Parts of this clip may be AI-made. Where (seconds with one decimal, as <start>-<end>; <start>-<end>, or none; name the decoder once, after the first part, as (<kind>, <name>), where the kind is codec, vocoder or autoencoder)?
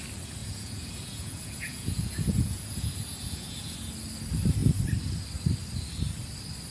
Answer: 0.4-3.9 (vocoder, Vocos)